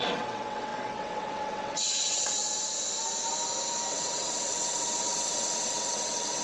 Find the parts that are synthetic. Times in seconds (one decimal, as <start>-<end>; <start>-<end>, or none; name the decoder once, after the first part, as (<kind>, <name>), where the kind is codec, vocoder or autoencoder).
0.0-2.4 (vocoder, WaveNeXt); 3.9-6.4